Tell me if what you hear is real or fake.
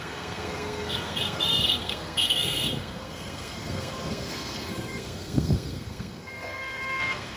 fake